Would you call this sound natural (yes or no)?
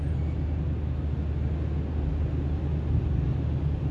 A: yes